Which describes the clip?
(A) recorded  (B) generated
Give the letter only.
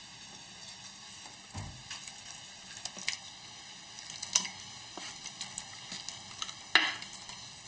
A